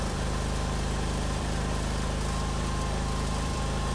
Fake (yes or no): yes